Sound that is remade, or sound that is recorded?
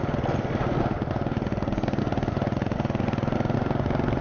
recorded